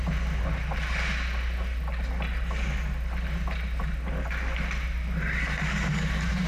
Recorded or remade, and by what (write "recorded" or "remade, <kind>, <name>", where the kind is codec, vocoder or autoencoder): recorded